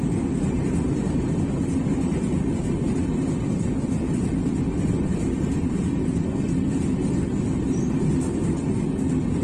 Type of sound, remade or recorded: recorded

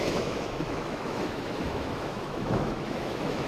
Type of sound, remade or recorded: remade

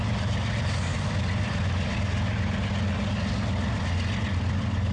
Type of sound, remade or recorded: recorded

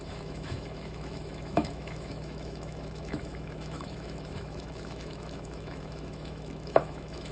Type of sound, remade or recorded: remade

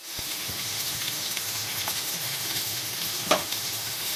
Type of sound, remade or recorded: remade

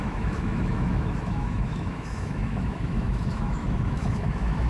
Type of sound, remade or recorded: remade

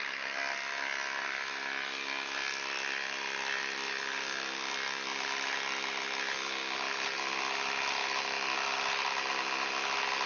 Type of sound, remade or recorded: recorded